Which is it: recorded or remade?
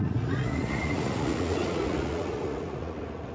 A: remade